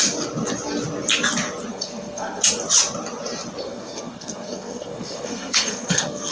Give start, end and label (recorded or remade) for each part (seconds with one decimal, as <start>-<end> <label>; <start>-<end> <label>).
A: 0.0-1.7 recorded; 1.7-2.4 remade; 2.4-3.6 recorded; 3.6-6.3 remade